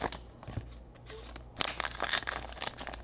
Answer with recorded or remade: recorded